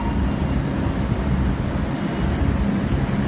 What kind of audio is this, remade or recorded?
recorded